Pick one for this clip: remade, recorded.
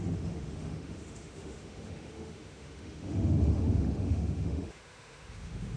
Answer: remade